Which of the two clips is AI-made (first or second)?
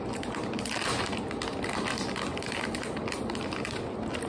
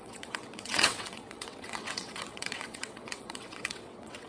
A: second